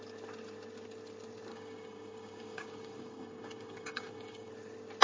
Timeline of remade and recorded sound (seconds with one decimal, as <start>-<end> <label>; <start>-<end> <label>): 0.0-1.5 recorded; 1.5-4.5 remade; 4.5-5.0 recorded

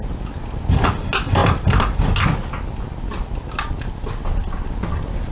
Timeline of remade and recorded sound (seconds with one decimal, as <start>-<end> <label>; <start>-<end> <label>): 0.0-5.3 recorded

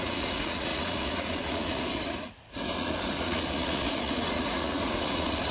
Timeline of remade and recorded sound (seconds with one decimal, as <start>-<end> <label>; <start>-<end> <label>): 0.0-5.5 remade

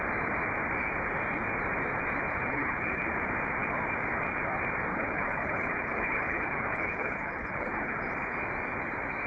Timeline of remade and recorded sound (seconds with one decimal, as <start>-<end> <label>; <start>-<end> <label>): 0.0-2.3 recorded; 2.3-3.0 remade; 3.0-4.9 recorded; 4.9-8.1 remade; 8.1-9.3 recorded

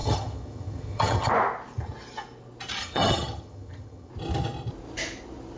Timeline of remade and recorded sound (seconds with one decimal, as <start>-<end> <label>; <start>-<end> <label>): 0.0-1.3 remade; 1.3-2.8 recorded; 2.8-4.1 remade; 4.1-5.6 recorded

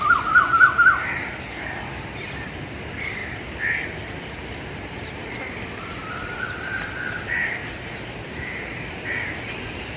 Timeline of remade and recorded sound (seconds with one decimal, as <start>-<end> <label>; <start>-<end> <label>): 0.0-3.2 remade; 3.2-4.8 recorded; 4.8-7.6 remade; 7.6-8.4 recorded; 8.4-10.0 remade

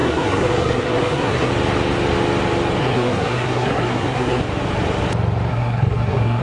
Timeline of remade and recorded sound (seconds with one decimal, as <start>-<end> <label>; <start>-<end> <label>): 0.0-1.5 remade; 1.5-2.8 recorded; 2.8-4.4 remade; 4.4-5.5 recorded; 5.5-6.4 remade

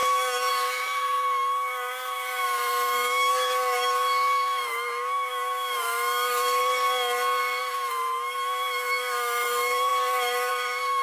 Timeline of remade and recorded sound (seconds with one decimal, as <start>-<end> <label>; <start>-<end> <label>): 0.0-6.6 remade; 6.6-7.6 recorded; 7.6-11.0 remade